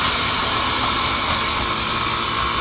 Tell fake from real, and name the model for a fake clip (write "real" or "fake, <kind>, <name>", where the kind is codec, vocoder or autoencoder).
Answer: real